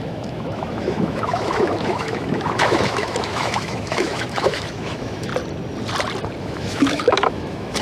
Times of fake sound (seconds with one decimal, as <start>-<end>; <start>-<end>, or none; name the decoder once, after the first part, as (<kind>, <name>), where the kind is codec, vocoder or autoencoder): 0.0-5.3 (autoencoder, DAC-VAE); 6.4-7.8